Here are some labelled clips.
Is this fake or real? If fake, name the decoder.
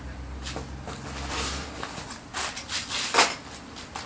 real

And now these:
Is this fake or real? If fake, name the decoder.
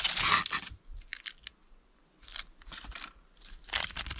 real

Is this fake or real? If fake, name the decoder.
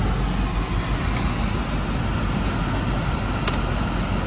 real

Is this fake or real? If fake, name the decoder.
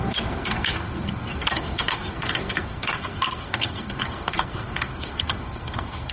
fake, codec, SNAC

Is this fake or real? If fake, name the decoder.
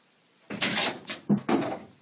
real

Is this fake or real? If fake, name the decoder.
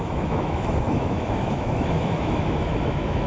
fake, autoencoder, DAC-VAE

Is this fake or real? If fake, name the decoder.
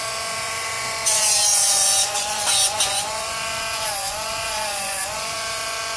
fake, vocoder, Vocos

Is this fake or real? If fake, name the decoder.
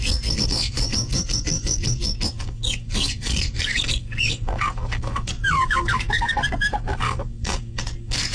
fake, codec, SNAC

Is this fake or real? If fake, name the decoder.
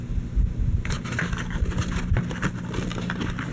real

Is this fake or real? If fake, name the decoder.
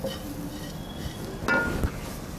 real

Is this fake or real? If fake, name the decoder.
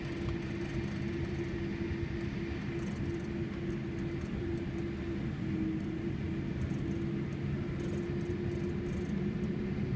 real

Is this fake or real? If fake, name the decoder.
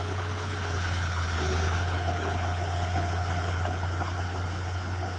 fake, codec, HILCodec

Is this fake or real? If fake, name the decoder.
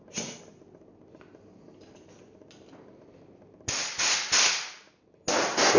real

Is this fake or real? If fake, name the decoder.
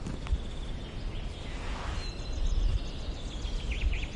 real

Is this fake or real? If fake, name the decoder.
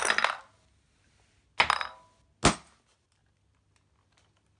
real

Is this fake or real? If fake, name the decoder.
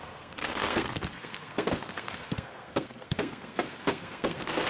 fake, codec, SNAC